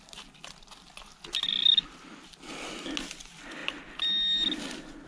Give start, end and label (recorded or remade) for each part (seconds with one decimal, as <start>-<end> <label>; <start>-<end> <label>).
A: 0.0-5.1 recorded